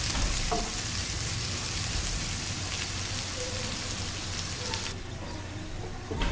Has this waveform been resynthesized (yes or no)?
yes